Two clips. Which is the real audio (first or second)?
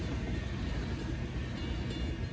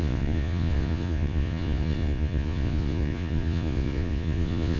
first